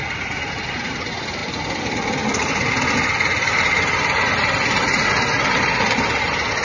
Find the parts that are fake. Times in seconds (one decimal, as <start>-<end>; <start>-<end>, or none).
1.4-3.6

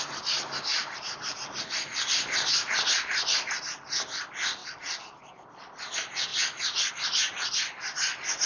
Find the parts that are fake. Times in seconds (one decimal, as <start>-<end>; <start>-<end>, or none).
0.7-2.5; 4.6-5.2

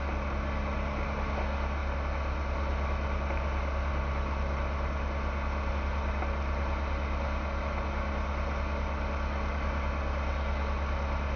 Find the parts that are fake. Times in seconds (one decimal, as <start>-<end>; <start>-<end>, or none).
none

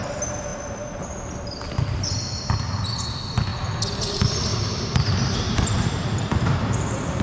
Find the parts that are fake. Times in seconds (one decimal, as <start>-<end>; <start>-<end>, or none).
4.5-7.2